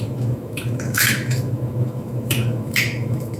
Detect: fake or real fake